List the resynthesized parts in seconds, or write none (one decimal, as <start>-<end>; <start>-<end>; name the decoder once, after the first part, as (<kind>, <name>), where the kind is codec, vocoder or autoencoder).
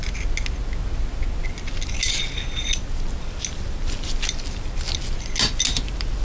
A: none